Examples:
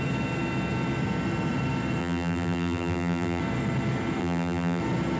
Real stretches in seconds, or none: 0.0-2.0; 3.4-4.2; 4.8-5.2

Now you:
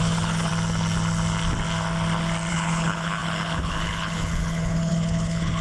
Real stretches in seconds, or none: 0.5-2.5